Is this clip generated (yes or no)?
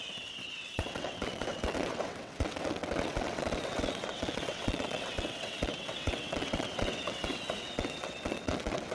yes